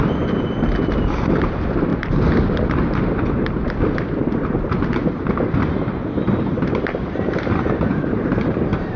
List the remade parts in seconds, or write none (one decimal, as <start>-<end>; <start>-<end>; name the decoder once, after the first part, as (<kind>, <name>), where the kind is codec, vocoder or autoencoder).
none